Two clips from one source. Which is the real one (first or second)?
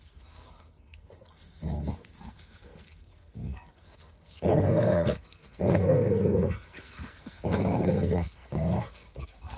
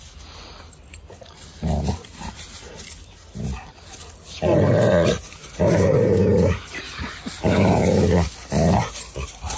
second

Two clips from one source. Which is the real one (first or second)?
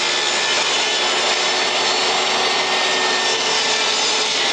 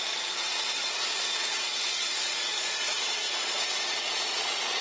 first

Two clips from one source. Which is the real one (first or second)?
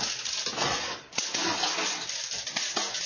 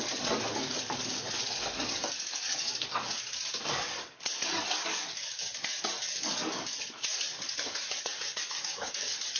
first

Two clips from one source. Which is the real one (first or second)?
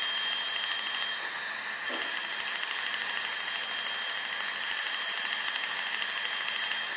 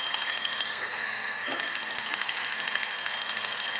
first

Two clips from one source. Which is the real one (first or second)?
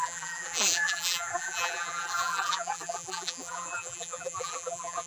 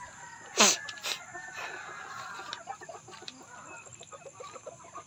second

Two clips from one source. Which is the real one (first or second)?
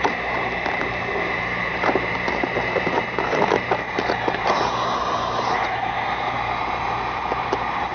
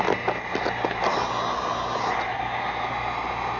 second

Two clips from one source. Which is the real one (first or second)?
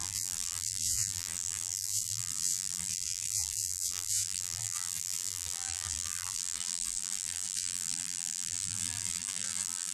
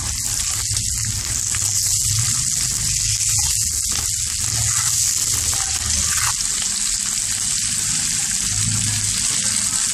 second